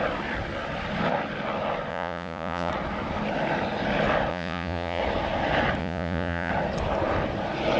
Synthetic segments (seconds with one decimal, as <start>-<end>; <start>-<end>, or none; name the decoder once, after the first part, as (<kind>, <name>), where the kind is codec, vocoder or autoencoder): 1.9-2.7 (vocoder, Vocos); 4.3-5.0; 5.8-6.5